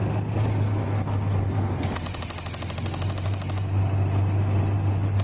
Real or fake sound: real